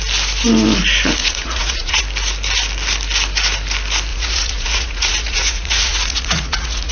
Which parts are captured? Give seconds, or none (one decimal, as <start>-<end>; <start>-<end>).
0.0-1.2; 2.0-4.1